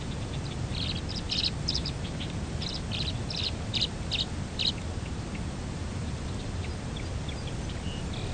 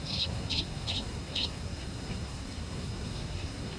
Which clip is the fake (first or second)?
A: second